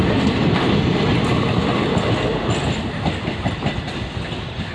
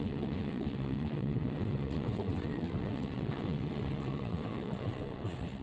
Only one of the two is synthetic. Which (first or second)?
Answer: second